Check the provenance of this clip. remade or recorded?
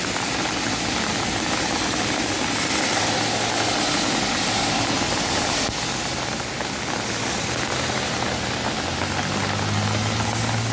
recorded